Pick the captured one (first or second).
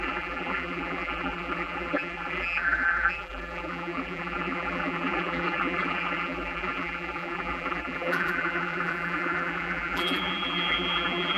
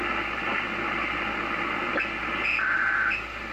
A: second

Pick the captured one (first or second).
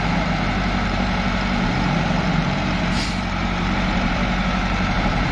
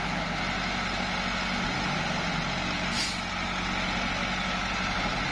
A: second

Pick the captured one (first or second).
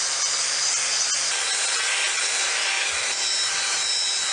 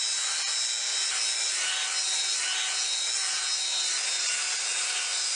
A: second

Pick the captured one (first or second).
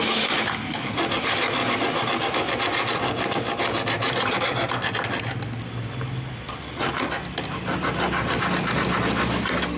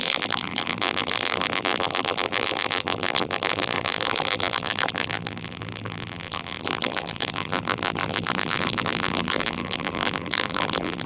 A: first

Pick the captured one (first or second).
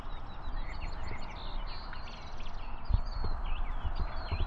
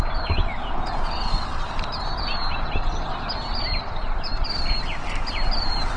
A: first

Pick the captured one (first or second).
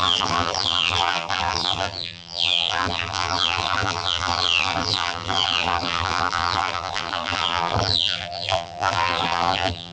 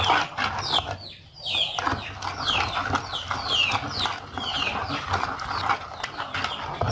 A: second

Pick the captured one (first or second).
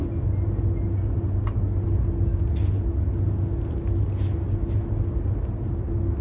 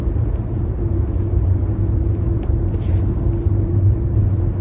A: first